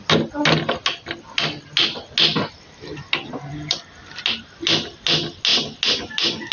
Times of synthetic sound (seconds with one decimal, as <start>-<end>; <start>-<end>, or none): none